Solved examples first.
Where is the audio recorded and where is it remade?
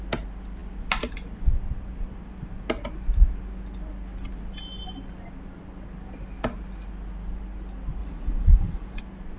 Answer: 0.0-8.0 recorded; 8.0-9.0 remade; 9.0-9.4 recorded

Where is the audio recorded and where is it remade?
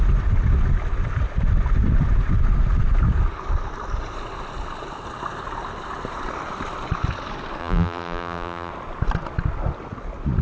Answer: 0.0-7.6 recorded; 7.6-8.7 remade; 8.7-10.4 recorded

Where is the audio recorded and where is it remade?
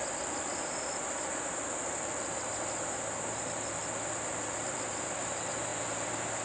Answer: 0.0-6.4 recorded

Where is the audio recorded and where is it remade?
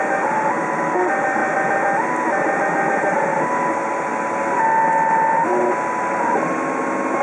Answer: 0.0-7.2 recorded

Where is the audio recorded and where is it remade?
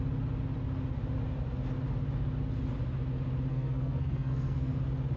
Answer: 0.0-3.5 recorded; 3.5-4.8 remade; 4.8-5.2 recorded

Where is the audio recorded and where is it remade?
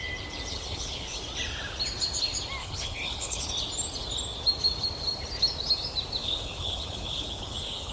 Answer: 0.0-0.5 recorded; 0.5-1.2 remade; 1.2-2.6 recorded; 2.6-3.5 remade; 3.5-6.2 recorded; 6.2-7.9 remade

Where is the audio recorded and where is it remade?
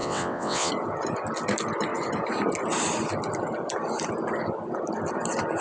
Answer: 0.0-0.7 remade; 0.7-5.6 recorded